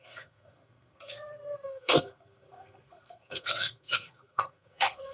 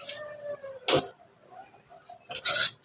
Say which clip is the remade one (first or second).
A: first